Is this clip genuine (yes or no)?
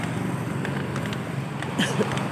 yes